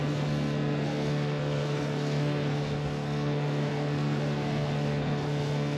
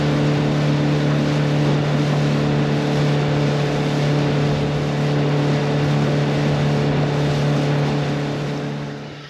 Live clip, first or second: second